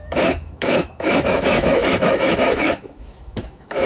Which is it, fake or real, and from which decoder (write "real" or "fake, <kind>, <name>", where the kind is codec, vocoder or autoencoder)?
fake, autoencoder, DAC-VAE